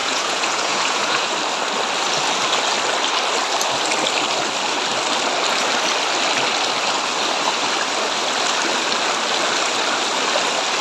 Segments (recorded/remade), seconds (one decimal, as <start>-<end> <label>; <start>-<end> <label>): 0.0-1.3 remade; 1.3-10.8 recorded